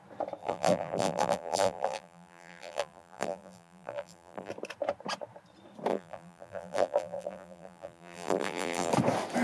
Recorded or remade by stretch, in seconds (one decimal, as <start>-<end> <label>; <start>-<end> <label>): 0.0-0.4 recorded; 0.4-4.5 remade; 4.5-5.9 recorded; 5.9-8.9 remade; 8.9-9.4 recorded